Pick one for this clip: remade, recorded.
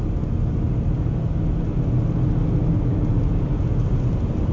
recorded